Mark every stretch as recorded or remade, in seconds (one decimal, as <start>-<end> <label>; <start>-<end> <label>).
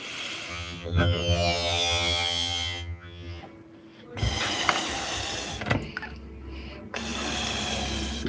0.0-0.5 recorded; 0.5-3.4 remade; 3.4-8.3 recorded